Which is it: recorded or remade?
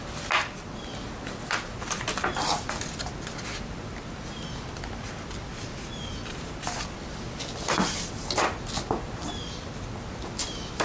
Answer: recorded